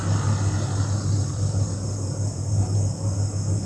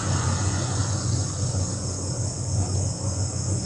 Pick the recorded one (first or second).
first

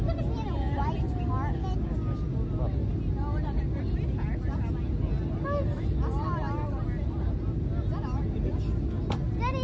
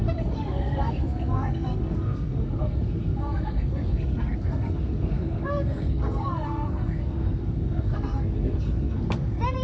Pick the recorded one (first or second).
first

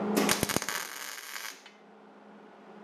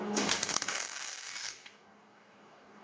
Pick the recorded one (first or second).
first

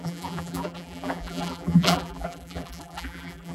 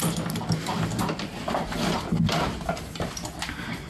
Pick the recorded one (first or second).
second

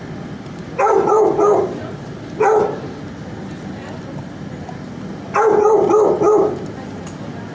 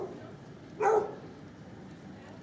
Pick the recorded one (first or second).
first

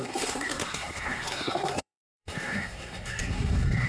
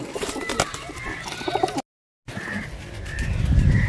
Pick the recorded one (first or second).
second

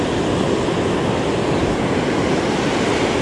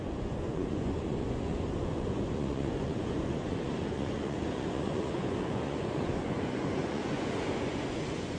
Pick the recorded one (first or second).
first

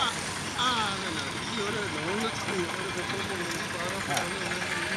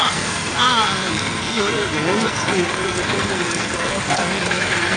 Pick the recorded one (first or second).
first